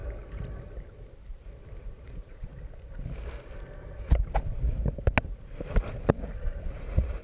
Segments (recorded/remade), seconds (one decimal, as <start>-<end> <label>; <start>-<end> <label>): 0.0-2.1 recorded; 2.1-2.5 remade; 2.5-6.1 recorded; 6.1-7.2 remade